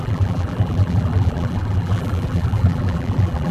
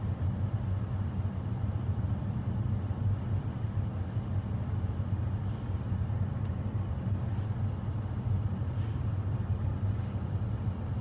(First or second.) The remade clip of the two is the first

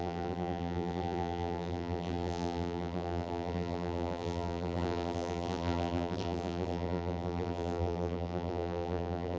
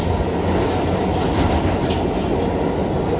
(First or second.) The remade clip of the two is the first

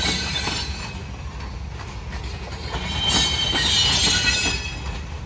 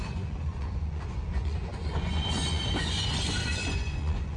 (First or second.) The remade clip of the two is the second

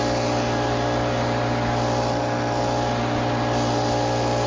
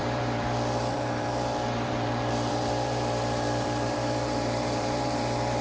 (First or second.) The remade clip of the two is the second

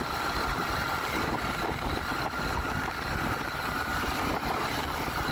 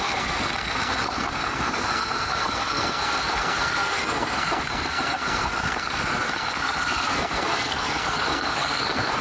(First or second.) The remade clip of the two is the second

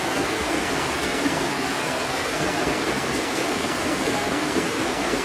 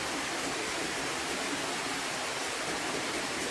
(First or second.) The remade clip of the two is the first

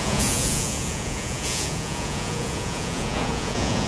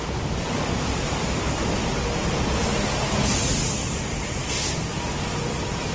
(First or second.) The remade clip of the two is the first